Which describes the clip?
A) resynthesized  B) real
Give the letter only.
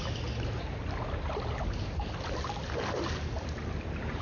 B